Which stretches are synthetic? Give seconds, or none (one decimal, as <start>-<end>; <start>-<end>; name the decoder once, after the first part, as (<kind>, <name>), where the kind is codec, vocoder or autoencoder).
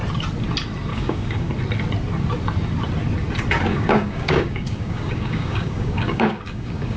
0.9-1.5 (codec, DAC); 3.7-7.0